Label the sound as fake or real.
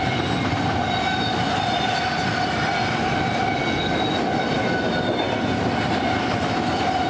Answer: real